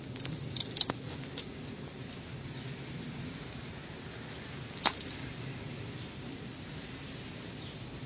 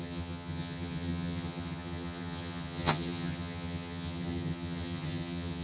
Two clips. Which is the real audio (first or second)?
first